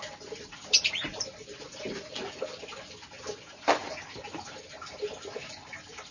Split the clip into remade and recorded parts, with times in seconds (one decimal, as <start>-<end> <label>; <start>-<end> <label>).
0.0-6.1 recorded